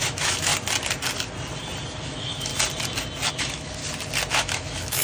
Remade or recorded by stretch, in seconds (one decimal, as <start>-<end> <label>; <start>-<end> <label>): 0.0-0.5 remade; 0.5-2.0 recorded; 2.0-2.5 remade; 2.5-3.3 recorded; 3.3-3.8 remade; 3.8-4.3 recorded; 4.3-5.0 remade